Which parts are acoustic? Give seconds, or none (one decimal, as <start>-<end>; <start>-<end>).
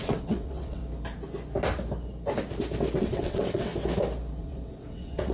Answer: 0.8-3.0; 3.7-4.4